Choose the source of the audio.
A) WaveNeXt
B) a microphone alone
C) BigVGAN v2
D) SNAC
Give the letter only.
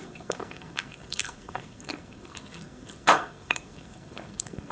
D